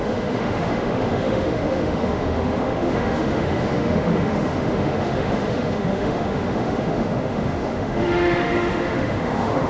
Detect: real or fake fake